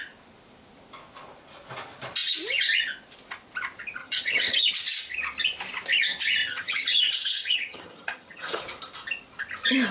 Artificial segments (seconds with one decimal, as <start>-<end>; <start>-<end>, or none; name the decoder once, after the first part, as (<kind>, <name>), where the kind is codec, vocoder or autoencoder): 4.0-4.7 (vocoder, HiFi-GAN); 6.4-8.6